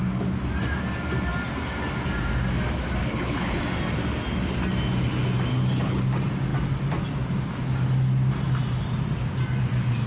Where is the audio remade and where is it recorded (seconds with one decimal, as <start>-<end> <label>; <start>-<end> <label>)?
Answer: 0.0-3.0 recorded; 3.0-3.6 remade; 3.6-5.5 recorded; 5.5-6.0 remade; 6.0-10.1 recorded